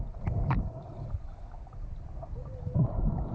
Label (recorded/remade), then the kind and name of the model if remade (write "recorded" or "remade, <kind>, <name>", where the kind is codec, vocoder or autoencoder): recorded